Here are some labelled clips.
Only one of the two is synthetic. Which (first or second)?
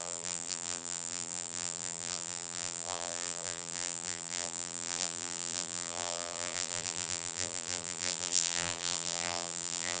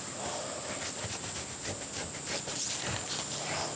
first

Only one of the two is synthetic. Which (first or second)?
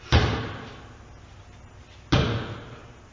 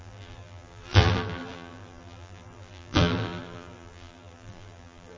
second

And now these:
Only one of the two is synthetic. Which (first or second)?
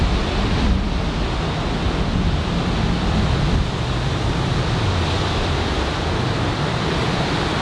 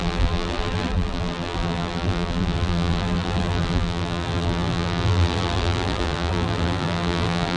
second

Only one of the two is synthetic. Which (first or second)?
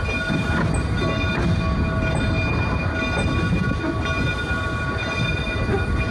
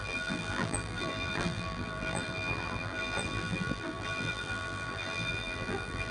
second